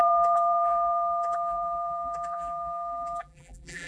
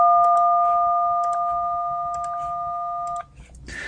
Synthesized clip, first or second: first